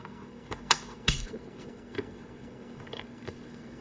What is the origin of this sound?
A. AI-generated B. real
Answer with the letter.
A